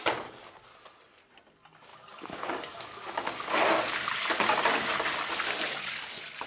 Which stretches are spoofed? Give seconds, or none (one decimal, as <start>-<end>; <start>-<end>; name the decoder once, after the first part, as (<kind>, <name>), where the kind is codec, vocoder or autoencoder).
1.9-3.1 (codec, DAC)

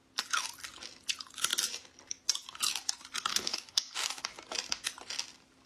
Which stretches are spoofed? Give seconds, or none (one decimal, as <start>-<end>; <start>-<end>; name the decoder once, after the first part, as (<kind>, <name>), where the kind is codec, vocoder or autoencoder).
3.3-4.2 (codec, DAC)